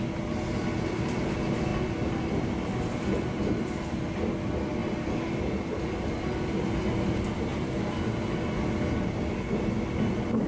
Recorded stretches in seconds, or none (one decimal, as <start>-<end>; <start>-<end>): 0.0-10.5